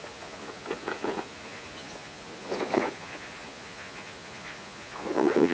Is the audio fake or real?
fake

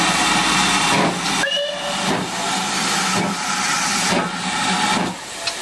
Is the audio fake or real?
real